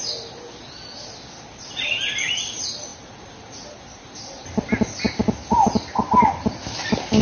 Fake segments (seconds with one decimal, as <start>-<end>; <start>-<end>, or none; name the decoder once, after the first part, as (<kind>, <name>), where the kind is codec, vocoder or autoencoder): 6.6-7.2 (vocoder, BigVGAN v2)